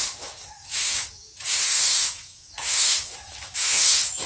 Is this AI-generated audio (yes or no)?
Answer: yes